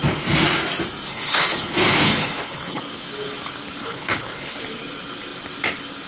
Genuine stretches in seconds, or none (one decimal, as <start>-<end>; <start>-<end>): 0.0-1.1; 2.8-3.8; 4.6-6.1